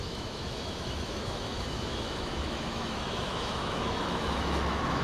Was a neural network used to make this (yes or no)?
yes